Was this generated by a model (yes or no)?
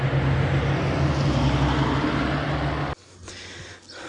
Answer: no